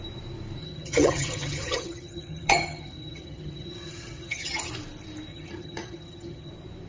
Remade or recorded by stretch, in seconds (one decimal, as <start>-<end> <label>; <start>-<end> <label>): 0.0-0.6 recorded; 0.6-4.7 remade; 4.7-5.3 recorded; 5.3-6.5 remade; 6.5-6.9 recorded